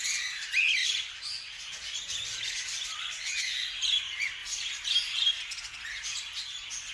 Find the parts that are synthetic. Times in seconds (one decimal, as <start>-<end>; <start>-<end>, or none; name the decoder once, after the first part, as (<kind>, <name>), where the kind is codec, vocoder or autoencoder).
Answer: 0.8-1.7 (vocoder, BigVGAN v2); 4.4-5.4